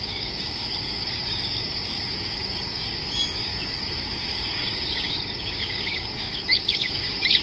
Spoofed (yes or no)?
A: yes